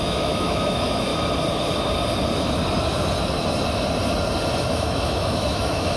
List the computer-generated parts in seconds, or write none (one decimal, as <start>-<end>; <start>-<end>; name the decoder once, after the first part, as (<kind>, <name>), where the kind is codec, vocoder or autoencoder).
0.0-1.1 (autoencoder, DAC-VAE); 4.7-6.0

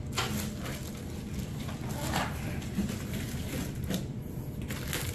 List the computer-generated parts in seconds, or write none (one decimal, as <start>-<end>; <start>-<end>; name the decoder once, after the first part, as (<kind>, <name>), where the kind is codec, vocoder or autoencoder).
none

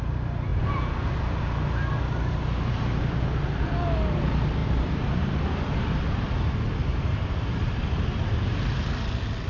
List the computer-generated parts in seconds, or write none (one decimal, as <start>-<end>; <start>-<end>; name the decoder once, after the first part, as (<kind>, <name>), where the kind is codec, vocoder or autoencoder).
4.6-6.0 (vocoder, BigVGAN v2); 6.8-7.8

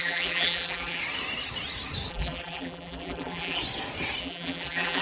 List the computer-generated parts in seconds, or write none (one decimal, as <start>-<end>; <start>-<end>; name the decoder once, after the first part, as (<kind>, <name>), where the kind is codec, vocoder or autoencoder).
0.0-1.0 (vocoder, BigVGAN v2); 2.1-3.6; 4.2-5.0

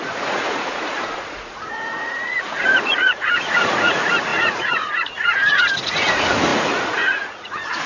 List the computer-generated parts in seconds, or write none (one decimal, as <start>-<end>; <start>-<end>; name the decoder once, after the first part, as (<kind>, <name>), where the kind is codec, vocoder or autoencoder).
0.0-7.9 (vocoder, Vocos)

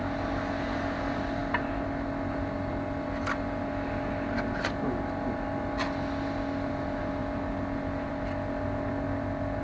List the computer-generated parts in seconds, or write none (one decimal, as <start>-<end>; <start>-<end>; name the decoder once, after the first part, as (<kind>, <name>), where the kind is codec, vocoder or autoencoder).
none